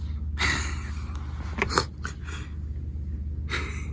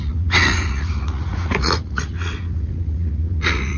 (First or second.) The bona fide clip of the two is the first